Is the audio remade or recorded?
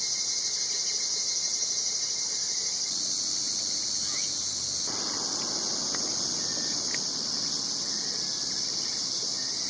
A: recorded